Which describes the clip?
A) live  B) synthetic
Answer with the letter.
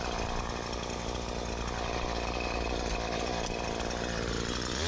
A